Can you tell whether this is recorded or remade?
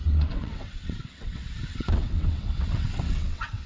remade